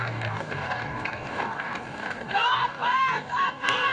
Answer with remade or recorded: remade